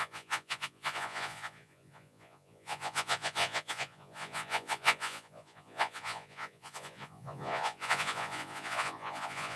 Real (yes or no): no